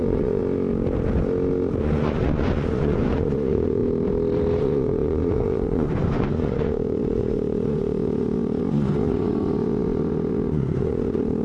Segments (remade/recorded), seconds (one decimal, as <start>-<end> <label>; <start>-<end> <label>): 0.0-0.4 remade; 0.4-1.8 recorded; 1.8-3.8 remade; 3.8-4.6 recorded; 4.6-11.4 remade